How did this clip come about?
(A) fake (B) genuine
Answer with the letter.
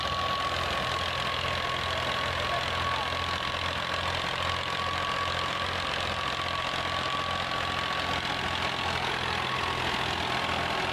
B